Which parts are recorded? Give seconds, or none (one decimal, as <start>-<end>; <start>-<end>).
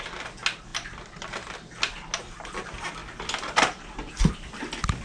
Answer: 0.0-5.0